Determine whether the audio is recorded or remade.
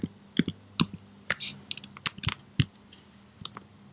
recorded